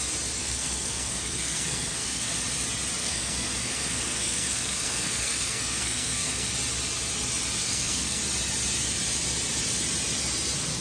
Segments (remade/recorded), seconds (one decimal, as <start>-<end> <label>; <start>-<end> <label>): 0.0-0.4 recorded; 0.4-2.4 remade; 2.4-3.0 recorded; 3.0-6.5 remade; 6.5-7.6 recorded; 7.6-8.2 remade; 8.2-10.8 recorded